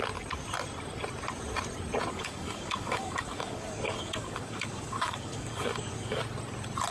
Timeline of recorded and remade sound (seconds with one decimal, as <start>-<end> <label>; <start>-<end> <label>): 0.0-2.1 recorded; 2.1-6.2 remade; 6.2-6.9 recorded